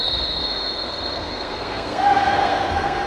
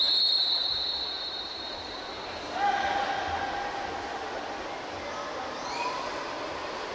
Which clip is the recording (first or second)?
second